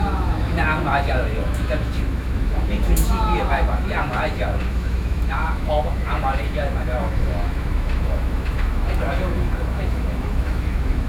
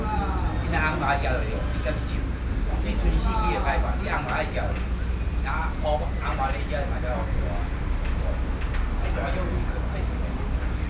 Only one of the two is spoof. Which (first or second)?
first